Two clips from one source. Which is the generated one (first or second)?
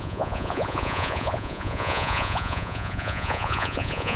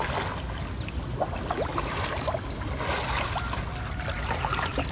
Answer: first